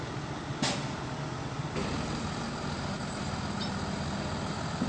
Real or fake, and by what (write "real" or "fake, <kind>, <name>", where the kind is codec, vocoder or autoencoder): real